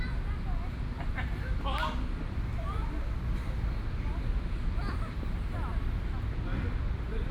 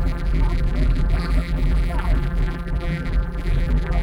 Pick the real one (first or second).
first